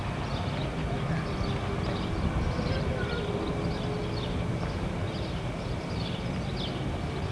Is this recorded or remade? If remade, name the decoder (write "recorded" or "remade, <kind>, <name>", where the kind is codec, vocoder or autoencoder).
recorded